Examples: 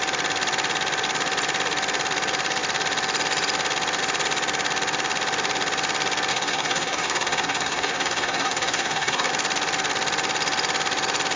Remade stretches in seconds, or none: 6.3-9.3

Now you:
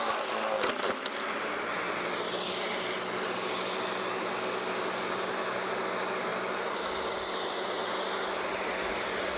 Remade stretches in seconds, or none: none

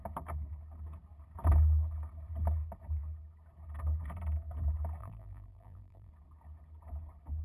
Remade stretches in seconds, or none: 5.0-6.1

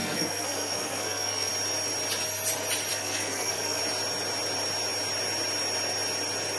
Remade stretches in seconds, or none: 0.0-1.5; 2.9-3.8

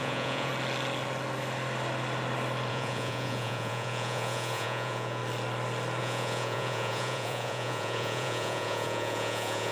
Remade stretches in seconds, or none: 0.0-0.5; 2.7-5.2; 6.0-9.7

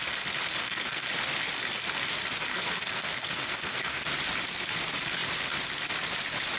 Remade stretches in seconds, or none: 0.6-1.1; 2.5-4.1

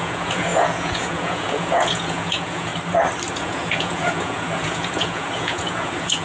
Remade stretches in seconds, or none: 0.0-2.7; 3.3-6.2